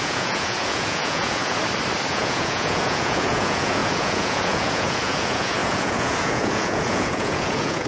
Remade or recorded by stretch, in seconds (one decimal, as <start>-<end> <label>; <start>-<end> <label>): 0.0-1.6 remade; 1.6-2.1 recorded; 2.1-7.9 remade